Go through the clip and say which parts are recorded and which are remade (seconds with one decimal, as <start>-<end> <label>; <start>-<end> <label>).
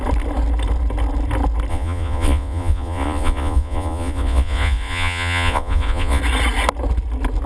0.0-1.7 recorded; 1.7-6.2 remade; 6.2-7.5 recorded